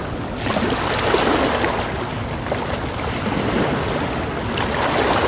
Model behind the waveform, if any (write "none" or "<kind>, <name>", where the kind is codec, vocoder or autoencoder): none